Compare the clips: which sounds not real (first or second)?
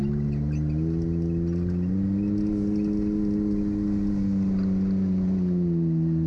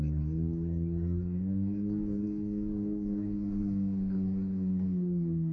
second